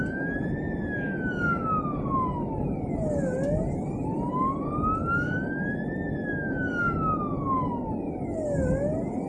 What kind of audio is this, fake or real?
real